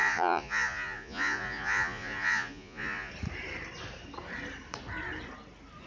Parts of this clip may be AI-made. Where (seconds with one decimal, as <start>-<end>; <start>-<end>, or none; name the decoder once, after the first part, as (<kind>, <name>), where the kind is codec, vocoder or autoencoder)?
0.0-3.1 (vocoder, Vocos)